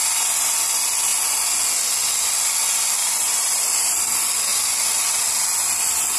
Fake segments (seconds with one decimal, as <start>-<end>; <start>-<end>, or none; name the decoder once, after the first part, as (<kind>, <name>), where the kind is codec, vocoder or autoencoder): 3.0-3.6 (vocoder, BigVGAN v2)